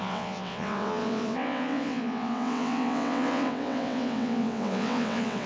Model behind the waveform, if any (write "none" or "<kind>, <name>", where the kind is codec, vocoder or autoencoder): vocoder, WaveNeXt